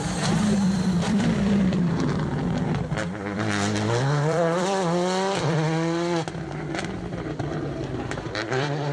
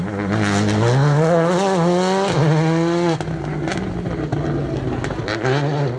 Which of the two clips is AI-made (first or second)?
first